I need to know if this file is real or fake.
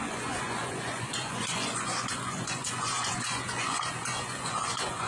fake